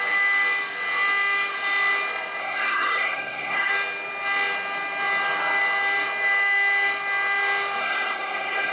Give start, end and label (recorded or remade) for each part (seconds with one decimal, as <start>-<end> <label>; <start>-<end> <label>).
0.0-2.4 recorded; 2.4-3.7 remade; 3.7-7.8 recorded; 7.8-8.7 remade